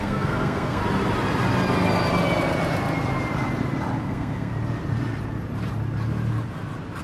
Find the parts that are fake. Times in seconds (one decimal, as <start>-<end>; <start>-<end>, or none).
0.0-0.8; 4.0-4.5